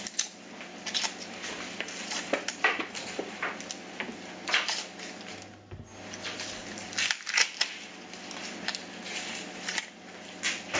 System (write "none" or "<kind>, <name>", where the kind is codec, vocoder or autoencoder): none